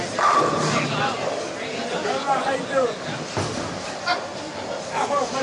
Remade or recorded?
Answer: recorded